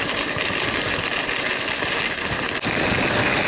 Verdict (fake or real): real